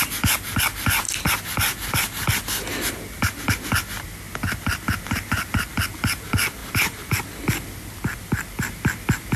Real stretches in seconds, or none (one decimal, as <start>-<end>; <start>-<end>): 0.0-9.4

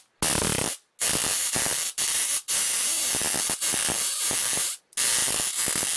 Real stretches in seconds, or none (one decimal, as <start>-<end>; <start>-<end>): 0.0-1.2; 4.8-6.0

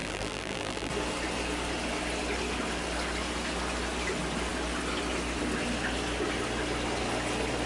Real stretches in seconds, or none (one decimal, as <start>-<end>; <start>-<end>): 0.9-7.7

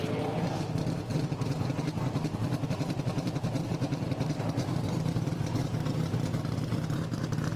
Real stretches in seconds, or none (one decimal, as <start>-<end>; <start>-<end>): 1.1-2.7; 5.6-6.5

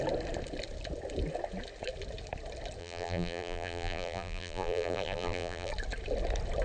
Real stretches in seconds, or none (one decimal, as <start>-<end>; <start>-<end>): 0.0-2.8; 5.7-6.6

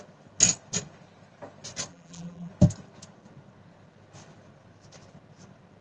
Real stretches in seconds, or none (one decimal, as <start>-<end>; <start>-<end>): 0.0-1.9; 2.5-5.8

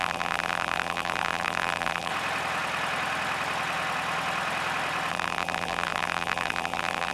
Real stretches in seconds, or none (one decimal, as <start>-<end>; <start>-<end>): 2.1-5.1